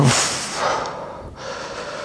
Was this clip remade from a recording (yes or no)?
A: no